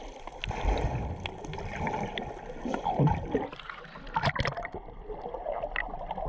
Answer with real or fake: real